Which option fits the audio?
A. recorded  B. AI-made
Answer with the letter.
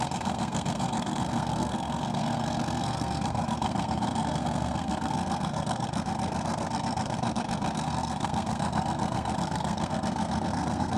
B